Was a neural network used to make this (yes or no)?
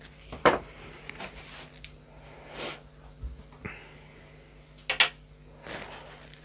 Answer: no